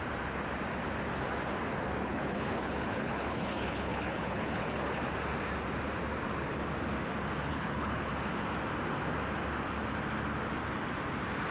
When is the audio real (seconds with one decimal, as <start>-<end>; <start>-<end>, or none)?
0.0-2.0; 5.0-7.5; 8.1-11.5